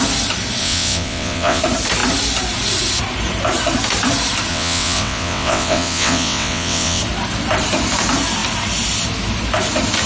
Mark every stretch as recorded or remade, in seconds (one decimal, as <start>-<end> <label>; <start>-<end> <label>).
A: 0.0-0.6 recorded; 0.6-1.6 remade; 1.6-4.5 recorded; 4.5-7.0 remade; 7.0-10.1 recorded